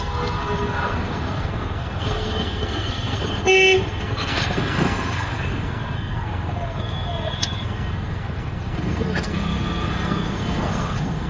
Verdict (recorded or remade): remade